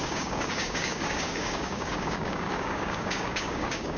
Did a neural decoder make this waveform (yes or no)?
yes